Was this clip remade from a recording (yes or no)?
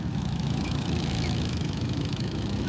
yes